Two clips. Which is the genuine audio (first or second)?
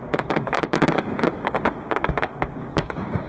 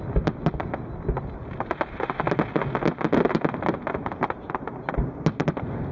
second